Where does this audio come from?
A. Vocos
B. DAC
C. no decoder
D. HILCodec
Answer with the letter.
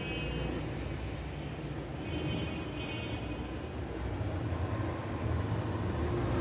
C